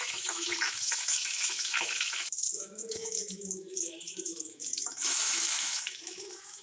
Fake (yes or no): yes